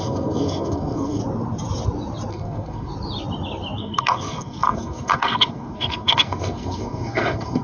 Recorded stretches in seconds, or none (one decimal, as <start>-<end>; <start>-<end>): 1.2-2.3; 2.9-3.8